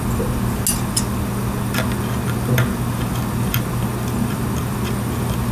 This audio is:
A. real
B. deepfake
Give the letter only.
A